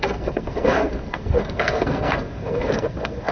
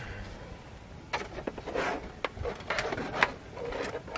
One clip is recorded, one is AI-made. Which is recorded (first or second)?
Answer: second